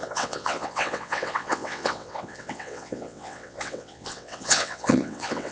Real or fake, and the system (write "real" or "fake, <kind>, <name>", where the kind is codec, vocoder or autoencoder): fake, vocoder, WaveNeXt